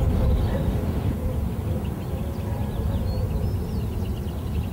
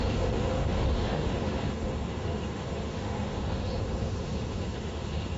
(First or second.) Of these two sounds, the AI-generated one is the second